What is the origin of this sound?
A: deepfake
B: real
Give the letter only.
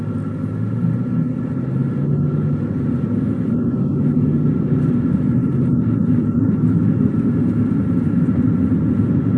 B